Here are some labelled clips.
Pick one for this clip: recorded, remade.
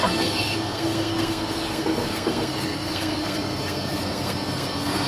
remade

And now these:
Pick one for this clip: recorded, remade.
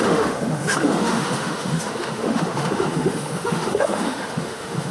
remade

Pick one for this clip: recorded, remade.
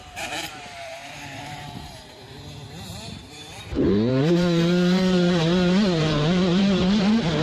remade